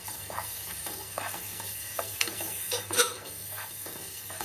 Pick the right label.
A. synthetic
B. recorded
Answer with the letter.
A